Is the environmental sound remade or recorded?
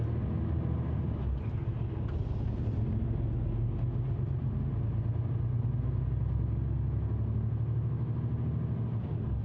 recorded